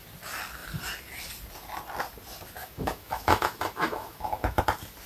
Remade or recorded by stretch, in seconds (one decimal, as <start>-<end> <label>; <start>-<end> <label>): 0.0-2.6 recorded; 2.6-4.6 remade; 4.6-5.1 recorded